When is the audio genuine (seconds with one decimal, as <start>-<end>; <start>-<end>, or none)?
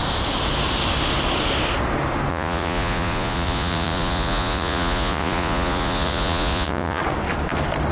0.0-2.3; 7.0-7.9